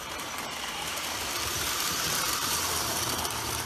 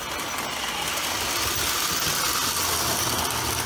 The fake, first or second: first